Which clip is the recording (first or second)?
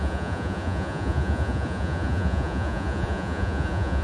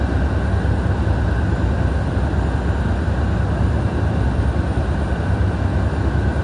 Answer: second